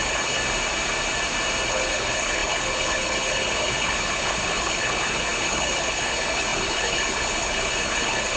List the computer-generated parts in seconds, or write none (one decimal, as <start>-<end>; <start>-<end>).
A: 0.0-0.4; 1.7-8.4